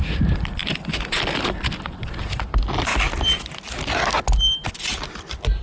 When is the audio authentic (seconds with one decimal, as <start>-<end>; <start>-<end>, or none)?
0.0-5.6